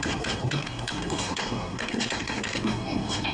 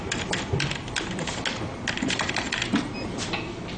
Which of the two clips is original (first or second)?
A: second